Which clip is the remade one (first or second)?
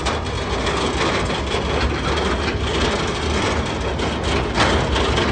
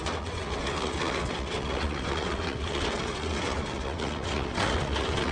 second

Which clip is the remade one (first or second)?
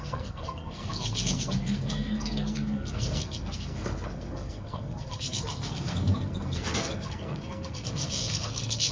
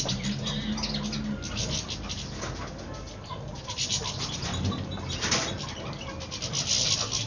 first